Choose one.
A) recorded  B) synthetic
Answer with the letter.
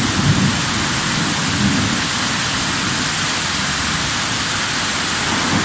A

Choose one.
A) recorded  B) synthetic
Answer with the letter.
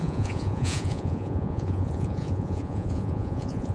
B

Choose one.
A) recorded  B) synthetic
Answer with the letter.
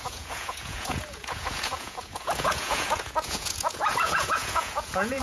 B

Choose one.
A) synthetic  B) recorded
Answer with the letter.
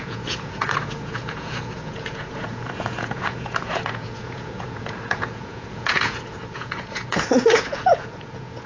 A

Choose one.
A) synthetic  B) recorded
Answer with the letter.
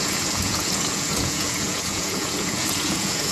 A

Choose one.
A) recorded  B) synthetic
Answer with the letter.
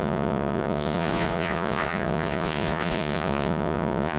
B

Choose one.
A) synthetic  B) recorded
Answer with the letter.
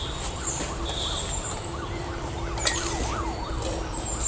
B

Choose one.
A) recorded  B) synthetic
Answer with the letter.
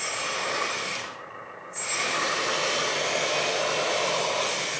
A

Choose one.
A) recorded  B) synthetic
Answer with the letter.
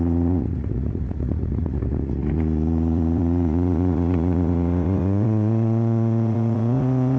B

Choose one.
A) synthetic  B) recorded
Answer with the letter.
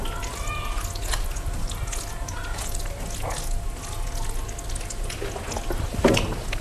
B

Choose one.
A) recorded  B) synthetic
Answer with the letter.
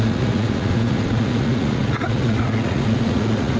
B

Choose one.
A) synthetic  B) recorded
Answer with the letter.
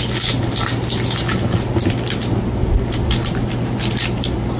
B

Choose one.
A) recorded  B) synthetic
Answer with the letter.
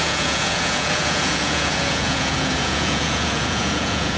B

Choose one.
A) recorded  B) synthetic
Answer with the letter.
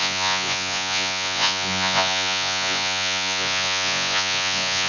B